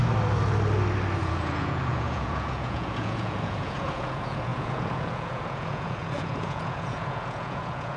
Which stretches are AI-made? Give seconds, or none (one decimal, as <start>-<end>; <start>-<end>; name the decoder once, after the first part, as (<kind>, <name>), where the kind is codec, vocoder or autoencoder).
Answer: 1.2-8.0 (vocoder, Vocos)